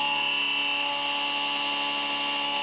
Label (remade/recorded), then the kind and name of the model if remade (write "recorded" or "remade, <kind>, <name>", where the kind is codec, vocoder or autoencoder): recorded